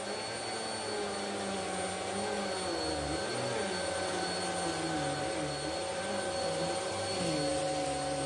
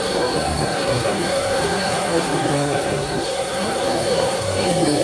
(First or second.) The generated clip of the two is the second